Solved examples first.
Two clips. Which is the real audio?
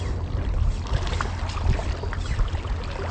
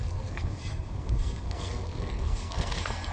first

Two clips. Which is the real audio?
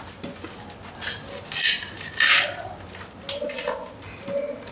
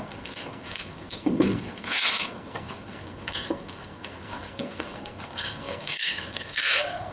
first